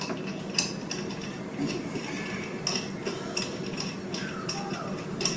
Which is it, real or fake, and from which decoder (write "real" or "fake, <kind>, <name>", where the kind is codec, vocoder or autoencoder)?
real